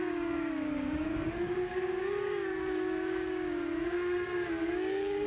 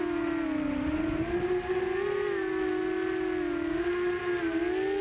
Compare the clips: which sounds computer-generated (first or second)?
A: first